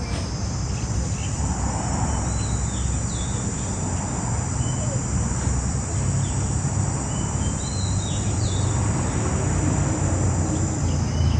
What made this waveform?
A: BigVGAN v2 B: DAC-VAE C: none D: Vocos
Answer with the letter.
C